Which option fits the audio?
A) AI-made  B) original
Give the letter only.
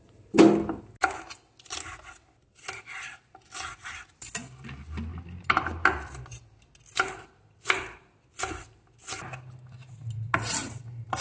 B